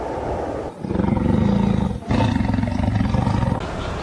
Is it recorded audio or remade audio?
recorded